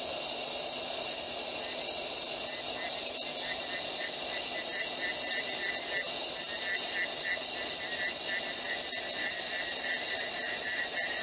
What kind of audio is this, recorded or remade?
recorded